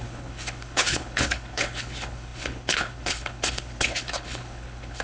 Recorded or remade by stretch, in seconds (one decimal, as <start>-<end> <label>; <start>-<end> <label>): 0.0-5.0 remade